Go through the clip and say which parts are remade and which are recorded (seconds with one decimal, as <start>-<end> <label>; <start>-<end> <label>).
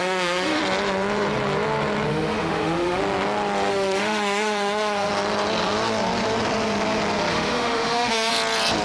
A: 0.0-0.6 remade; 0.6-2.1 recorded; 2.1-3.0 remade; 3.0-3.7 recorded; 3.7-5.1 remade; 5.1-7.3 recorded; 7.3-8.3 remade; 8.3-8.8 recorded